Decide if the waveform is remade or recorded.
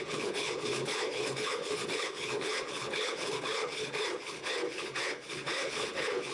remade